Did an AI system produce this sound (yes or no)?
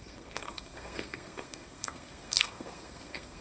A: yes